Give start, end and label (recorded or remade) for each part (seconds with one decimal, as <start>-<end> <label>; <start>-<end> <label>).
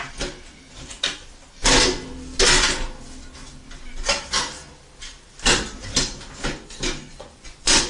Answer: 0.0-7.1 recorded; 7.1-7.9 remade